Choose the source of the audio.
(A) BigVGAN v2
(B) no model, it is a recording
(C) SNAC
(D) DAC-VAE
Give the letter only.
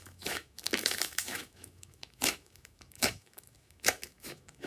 D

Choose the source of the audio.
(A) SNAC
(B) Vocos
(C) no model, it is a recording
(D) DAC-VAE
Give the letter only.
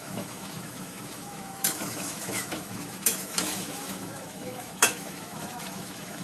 D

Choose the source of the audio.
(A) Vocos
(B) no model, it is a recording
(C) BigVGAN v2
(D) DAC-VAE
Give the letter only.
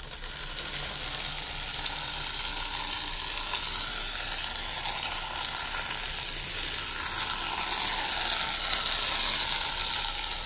B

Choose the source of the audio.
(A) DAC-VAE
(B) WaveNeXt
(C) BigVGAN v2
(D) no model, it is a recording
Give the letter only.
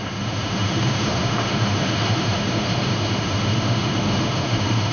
A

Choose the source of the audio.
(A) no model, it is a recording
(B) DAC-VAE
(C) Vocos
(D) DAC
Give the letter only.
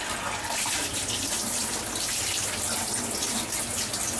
A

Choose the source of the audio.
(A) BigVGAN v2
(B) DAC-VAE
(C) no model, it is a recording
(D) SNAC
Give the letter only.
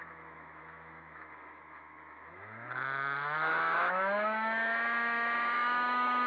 B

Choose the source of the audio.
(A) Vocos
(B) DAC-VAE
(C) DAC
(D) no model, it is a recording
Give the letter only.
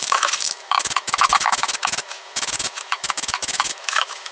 B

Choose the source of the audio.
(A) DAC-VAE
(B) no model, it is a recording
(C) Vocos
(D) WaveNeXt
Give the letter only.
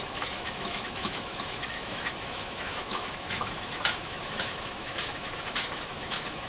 A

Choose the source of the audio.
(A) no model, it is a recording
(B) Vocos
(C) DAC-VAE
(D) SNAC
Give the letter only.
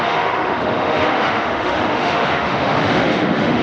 C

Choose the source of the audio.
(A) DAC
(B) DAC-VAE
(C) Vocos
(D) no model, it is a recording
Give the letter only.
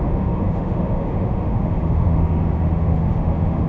B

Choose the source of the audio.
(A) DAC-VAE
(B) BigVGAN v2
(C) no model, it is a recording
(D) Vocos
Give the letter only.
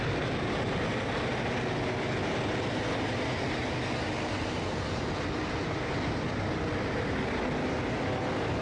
C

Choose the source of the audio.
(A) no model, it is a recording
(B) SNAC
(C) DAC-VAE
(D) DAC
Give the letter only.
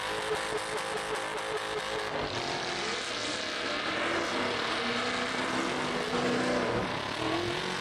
A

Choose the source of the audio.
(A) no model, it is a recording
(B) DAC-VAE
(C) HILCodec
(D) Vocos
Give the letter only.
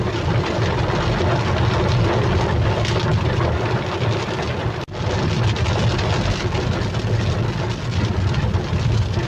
A